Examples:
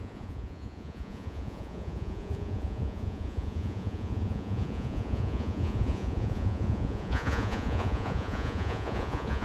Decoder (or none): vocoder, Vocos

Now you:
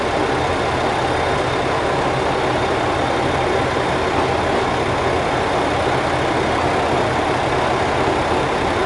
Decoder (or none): none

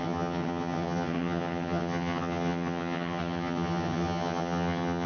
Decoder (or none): vocoder, HiFi-GAN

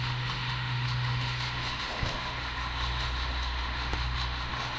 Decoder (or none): autoencoder, DAC-VAE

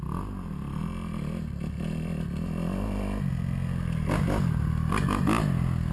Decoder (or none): none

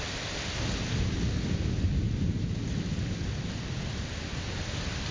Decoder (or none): none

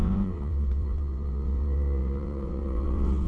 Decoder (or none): vocoder, WaveNeXt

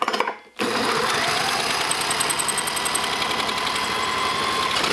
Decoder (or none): none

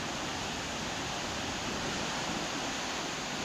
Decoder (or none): none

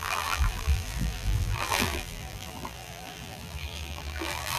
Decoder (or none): vocoder, BigVGAN v2